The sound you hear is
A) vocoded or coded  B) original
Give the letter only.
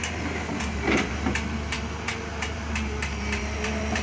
A